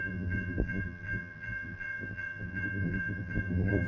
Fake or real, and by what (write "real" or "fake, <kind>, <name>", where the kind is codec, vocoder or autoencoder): fake, vocoder, BigVGAN v2